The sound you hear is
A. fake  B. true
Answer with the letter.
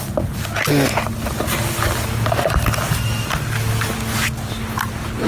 B